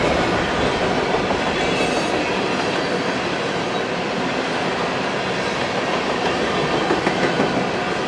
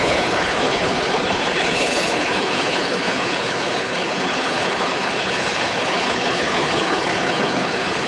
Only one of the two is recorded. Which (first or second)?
first